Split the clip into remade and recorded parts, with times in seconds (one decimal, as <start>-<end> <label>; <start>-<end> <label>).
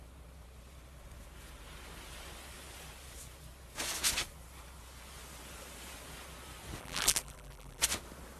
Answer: 0.0-6.8 recorded; 6.8-7.8 remade; 7.8-8.4 recorded